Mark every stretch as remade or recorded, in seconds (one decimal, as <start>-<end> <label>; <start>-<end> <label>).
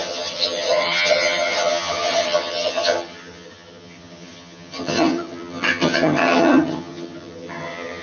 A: 0.0-8.0 remade